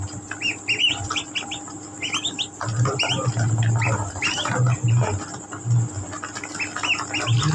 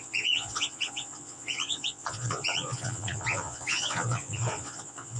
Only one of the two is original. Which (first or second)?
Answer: first